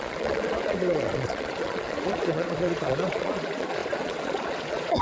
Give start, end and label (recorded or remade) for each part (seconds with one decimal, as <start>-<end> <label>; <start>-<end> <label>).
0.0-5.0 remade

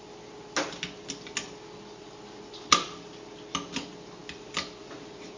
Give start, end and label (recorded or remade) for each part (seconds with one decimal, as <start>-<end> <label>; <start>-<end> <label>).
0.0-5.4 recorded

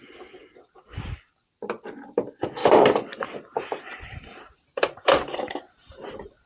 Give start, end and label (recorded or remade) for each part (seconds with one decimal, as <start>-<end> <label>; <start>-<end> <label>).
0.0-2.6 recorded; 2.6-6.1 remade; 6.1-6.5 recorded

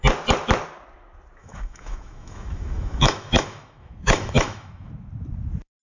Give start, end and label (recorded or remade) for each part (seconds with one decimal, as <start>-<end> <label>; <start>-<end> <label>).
0.0-1.4 recorded; 1.4-4.9 remade; 4.9-5.8 recorded